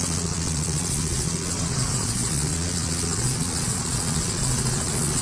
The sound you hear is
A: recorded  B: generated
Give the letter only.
B